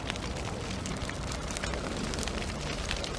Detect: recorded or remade remade